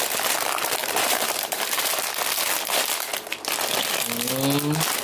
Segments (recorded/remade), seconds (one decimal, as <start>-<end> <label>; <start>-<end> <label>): 0.0-0.8 recorded; 0.8-1.9 remade; 1.9-5.0 recorded